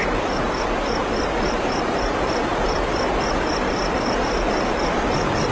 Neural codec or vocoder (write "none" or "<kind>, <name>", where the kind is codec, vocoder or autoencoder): none